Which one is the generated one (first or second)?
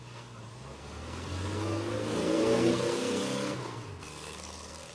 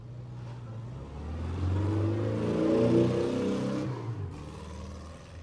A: first